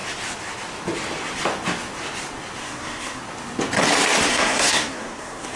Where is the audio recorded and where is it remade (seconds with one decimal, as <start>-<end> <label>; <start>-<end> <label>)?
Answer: 0.0-2.6 recorded; 2.6-3.2 remade; 3.2-4.3 recorded; 4.3-5.6 remade